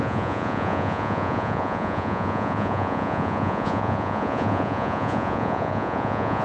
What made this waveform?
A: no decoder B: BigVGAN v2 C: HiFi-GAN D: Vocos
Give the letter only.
D